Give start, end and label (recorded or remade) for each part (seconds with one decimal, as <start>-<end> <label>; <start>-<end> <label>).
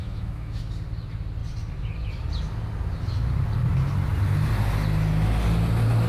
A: 0.0-0.6 remade; 0.6-6.1 recorded